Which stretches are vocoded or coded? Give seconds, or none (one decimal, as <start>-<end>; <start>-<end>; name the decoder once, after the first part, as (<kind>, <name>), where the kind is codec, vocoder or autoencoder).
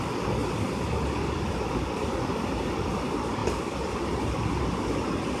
3.4-4.3 (vocoder, BigVGAN v2)